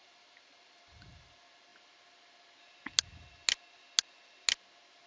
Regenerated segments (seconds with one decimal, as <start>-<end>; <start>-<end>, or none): 0.0-1.7

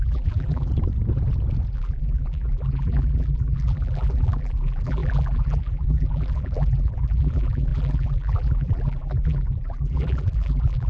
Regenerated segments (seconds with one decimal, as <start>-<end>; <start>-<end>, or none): 0.0-0.7; 1.7-10.9